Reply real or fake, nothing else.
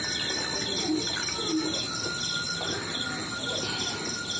real